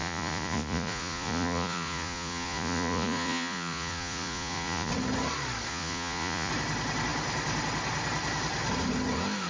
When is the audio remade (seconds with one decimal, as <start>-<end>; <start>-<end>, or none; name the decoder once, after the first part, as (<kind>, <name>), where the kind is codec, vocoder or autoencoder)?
0.0-4.9 (vocoder, Vocos); 5.7-6.5